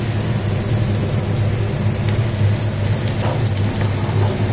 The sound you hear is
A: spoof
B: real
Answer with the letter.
B